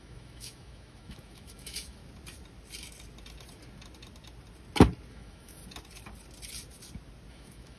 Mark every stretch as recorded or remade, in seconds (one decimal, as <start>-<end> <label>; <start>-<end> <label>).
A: 0.0-2.0 remade; 2.0-5.1 recorded; 5.1-5.6 remade; 5.6-7.3 recorded; 7.3-7.8 remade